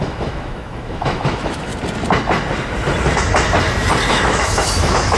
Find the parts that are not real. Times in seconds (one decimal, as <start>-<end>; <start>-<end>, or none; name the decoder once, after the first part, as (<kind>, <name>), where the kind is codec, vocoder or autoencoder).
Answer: 0.0-1.7 (autoencoder, DAC-VAE); 4.1-5.2